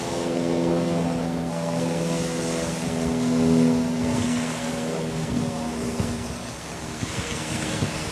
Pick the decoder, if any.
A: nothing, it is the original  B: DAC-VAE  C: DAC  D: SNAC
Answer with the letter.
D